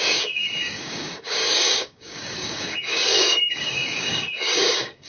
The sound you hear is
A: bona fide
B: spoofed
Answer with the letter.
B